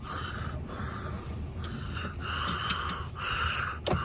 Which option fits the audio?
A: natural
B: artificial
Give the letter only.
A